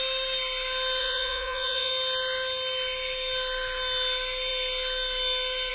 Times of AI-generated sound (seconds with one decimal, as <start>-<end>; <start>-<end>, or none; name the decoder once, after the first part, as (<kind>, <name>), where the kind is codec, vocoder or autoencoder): 1.0-1.9 (vocoder, Vocos)